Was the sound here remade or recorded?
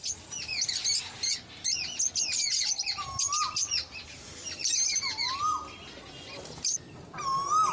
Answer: recorded